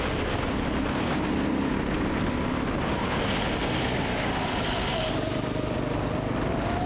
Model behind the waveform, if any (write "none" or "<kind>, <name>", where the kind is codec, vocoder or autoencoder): none